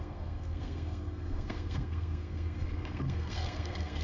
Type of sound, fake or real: fake